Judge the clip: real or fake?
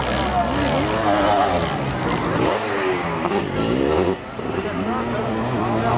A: real